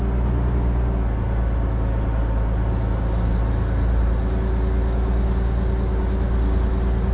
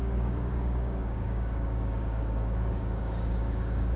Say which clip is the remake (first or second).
second